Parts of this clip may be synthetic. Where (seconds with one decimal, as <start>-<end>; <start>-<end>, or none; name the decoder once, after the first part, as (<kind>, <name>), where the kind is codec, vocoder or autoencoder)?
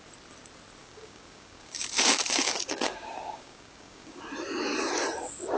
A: 0.8-4.2 (codec, DAC)